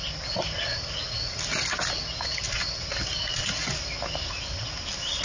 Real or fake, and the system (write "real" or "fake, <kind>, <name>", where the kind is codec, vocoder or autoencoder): real